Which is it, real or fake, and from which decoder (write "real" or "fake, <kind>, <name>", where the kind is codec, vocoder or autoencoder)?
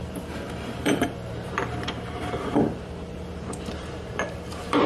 fake, vocoder, BigVGAN v2